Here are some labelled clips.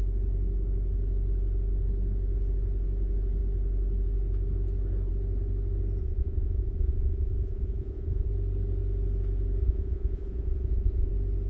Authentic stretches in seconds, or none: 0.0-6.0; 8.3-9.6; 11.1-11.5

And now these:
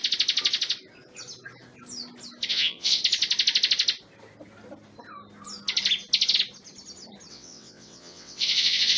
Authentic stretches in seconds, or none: 0.0-2.5; 3.0-7.3

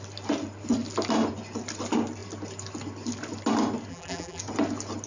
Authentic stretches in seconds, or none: 0.0-3.9; 4.4-5.1

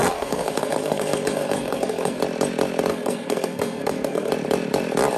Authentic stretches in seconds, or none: 2.2-2.9; 4.3-5.2

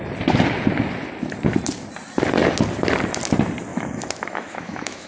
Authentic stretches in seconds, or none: 0.0-3.7